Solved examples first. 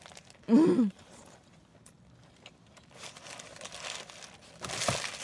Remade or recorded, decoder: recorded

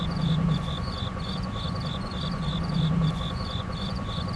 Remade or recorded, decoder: remade, vocoder, Vocos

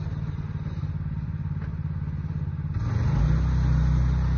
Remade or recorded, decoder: recorded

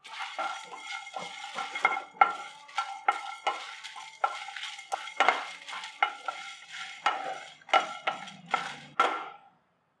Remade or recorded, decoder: recorded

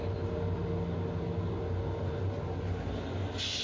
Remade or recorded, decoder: recorded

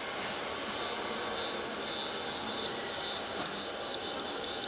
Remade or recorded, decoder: recorded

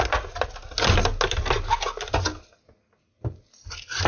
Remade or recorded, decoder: recorded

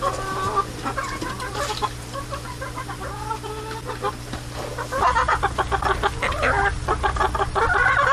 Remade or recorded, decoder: recorded